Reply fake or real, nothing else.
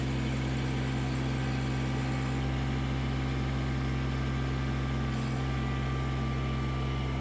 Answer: real